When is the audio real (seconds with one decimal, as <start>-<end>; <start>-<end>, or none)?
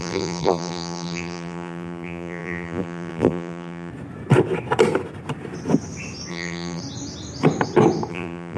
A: 3.9-6.3; 6.8-8.1